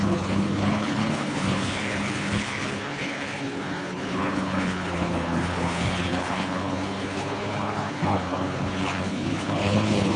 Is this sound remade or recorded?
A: remade